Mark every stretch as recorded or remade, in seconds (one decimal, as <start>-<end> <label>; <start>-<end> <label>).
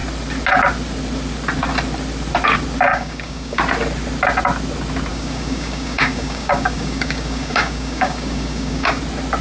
0.0-2.9 recorded; 2.9-3.6 remade; 3.6-5.1 recorded; 5.1-9.0 remade; 9.0-9.4 recorded